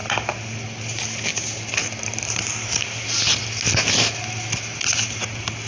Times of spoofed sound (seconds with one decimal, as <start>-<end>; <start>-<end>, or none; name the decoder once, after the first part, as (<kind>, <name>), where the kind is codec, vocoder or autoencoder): none